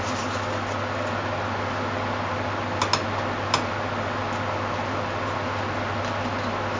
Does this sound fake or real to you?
real